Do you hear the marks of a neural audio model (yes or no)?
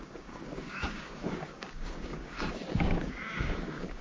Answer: yes